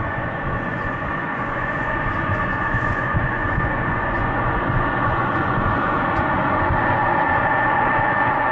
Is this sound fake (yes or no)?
yes